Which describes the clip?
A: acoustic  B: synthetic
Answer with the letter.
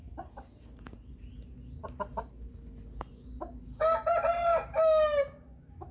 A